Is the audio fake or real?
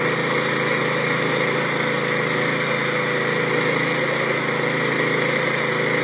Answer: real